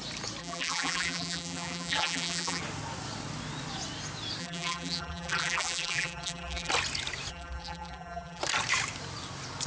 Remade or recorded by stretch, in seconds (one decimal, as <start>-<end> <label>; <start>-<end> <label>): 0.0-0.4 recorded; 0.4-2.6 remade; 2.6-4.4 recorded; 4.4-6.7 remade; 6.7-7.3 recorded; 7.3-8.4 remade; 8.4-9.7 recorded